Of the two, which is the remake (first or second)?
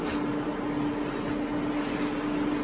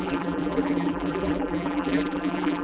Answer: second